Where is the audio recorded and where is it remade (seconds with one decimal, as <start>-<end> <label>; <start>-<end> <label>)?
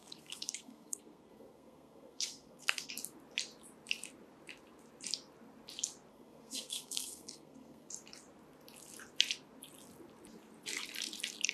0.0-2.9 remade; 2.9-6.1 recorded; 6.1-7.9 remade; 7.9-11.5 recorded